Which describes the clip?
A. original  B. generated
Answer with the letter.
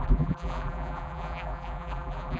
B